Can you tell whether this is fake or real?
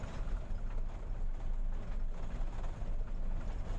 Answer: real